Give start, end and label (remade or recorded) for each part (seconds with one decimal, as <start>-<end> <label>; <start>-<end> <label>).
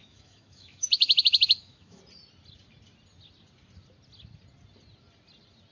0.0-2.0 remade; 2.0-5.7 recorded